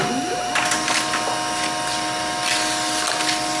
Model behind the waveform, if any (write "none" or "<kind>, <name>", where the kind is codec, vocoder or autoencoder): none